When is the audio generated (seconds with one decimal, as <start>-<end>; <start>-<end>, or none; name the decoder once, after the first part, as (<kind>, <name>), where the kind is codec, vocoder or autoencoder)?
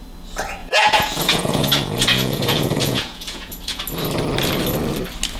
0.6-3.8 (vocoder, Vocos)